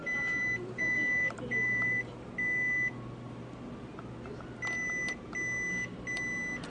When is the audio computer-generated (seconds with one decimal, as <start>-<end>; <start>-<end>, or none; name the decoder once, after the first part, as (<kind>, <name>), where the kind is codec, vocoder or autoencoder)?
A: 0.0-2.3 (vocoder, BigVGAN v2)